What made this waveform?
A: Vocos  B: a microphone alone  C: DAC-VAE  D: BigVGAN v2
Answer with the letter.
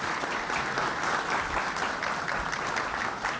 B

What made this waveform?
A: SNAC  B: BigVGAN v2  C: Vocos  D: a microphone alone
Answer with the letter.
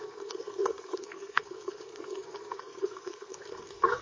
A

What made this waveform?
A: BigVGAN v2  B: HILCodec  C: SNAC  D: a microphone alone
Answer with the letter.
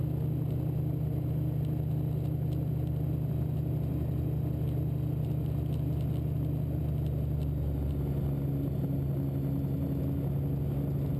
D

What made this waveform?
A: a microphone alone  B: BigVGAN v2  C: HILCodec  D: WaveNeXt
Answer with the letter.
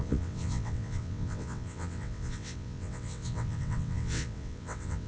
D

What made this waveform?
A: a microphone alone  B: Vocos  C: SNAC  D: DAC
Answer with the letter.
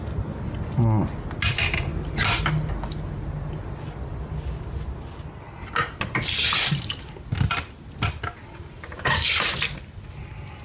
A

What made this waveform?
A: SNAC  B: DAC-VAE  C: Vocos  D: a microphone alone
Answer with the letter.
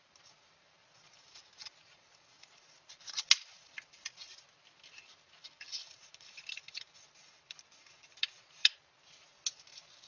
D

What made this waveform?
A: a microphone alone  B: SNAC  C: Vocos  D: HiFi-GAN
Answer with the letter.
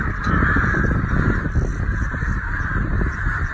A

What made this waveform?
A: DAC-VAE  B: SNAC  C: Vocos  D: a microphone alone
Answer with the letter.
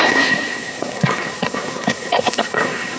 B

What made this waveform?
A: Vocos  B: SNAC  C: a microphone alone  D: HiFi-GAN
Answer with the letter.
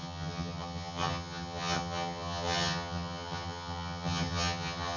D